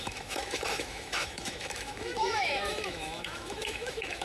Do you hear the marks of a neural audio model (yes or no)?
yes